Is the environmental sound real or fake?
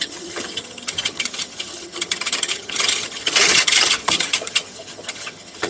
fake